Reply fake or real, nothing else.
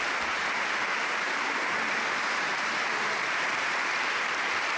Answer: fake